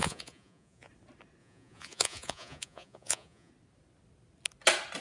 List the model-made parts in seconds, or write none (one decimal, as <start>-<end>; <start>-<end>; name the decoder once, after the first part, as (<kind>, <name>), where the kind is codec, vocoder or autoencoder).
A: 0.0-0.9 (vocoder, Vocos); 1.4-3.5